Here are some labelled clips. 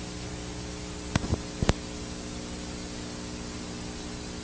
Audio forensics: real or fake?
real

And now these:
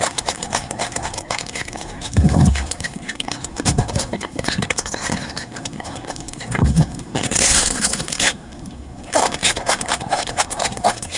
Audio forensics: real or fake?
fake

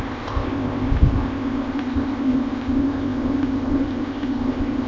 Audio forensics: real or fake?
fake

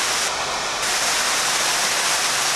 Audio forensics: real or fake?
real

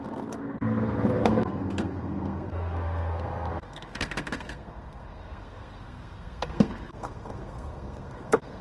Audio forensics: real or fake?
fake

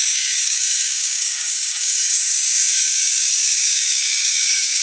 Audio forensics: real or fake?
fake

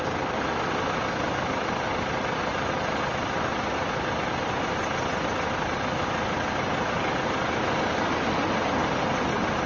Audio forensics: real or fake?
real